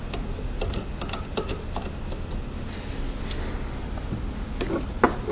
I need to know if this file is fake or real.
real